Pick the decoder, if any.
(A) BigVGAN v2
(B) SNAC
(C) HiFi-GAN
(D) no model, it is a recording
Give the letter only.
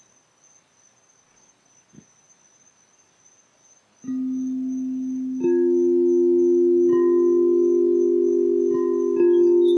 D